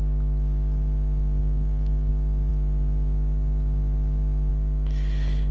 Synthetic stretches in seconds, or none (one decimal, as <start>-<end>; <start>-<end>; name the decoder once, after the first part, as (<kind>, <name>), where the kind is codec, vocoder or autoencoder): 1.4-2.1 (codec, DAC)